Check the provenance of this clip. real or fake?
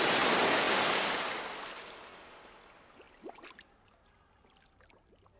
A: real